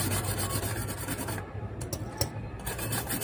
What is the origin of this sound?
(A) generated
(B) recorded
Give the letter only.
B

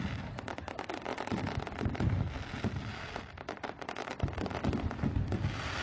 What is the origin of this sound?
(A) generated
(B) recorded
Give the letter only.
B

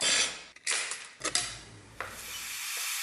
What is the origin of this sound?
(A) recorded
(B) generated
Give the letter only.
A